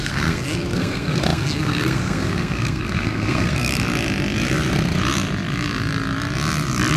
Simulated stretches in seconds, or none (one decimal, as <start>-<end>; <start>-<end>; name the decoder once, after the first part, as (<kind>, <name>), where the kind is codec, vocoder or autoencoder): 0.0-3.7 (codec, SNAC)